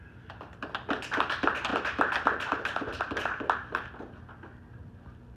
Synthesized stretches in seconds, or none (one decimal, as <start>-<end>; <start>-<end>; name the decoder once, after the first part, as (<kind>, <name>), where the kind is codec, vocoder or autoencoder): none

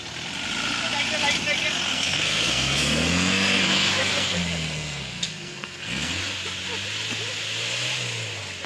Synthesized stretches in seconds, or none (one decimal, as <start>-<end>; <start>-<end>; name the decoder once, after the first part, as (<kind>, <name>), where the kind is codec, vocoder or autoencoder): 1.9-6.2 (codec, SNAC)